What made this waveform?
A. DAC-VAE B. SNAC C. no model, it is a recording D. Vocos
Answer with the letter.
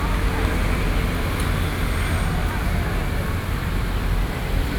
C